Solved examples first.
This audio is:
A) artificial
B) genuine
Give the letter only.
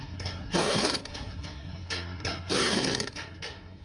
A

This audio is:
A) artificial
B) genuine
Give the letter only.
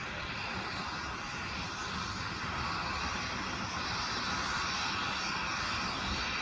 B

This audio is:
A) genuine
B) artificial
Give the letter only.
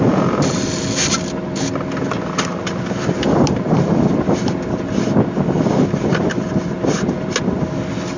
A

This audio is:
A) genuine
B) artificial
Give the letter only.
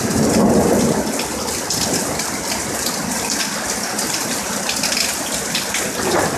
A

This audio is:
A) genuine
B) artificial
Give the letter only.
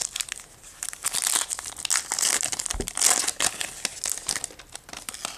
A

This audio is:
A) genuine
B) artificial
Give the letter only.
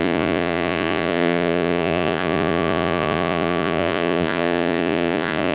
B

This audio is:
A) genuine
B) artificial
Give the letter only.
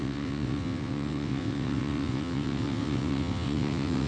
B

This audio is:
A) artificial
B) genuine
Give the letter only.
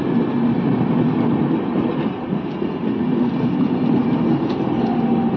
B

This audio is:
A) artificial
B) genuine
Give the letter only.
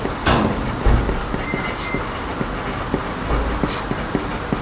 B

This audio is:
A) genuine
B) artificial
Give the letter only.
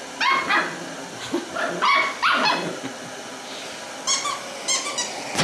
A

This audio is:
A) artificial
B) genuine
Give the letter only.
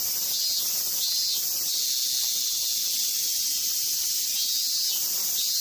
B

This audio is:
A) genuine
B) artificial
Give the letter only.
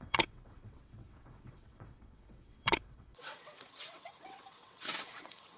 B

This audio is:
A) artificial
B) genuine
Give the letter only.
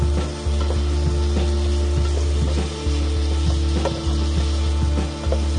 B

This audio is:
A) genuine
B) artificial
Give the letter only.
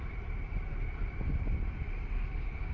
A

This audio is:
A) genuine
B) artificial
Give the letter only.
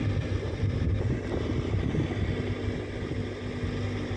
A